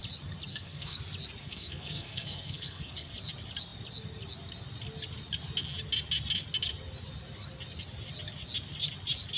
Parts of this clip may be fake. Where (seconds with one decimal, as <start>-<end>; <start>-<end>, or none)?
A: 0.5-1.0; 1.4-3.1